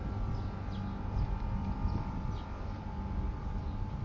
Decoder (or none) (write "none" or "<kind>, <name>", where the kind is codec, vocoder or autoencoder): none